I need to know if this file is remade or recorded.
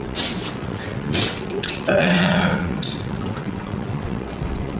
remade